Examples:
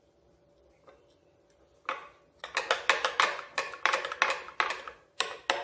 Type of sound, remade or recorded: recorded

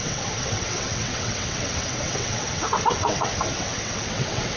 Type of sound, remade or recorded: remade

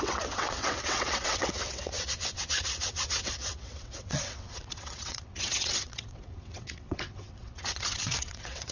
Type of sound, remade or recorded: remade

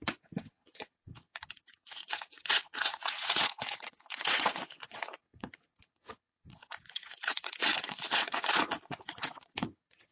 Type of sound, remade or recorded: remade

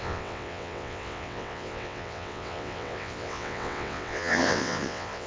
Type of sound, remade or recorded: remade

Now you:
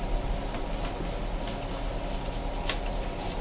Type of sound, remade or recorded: recorded